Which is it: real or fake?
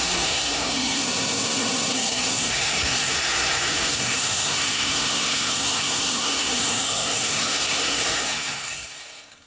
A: fake